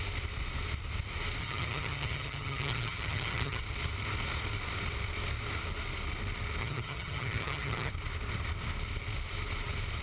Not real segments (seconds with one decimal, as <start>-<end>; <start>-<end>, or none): 1.4-3.6; 6.6-7.9